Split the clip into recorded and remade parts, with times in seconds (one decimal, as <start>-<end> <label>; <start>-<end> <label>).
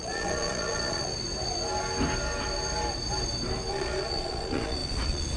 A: 0.0-1.1 remade; 1.1-3.7 recorded; 3.7-5.4 remade